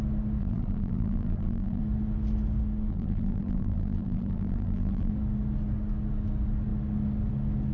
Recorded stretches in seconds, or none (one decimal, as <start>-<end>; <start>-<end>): 0.0-0.4; 1.8-2.9; 5.1-7.7